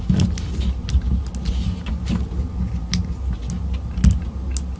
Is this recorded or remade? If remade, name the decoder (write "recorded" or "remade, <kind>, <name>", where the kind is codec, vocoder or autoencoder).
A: recorded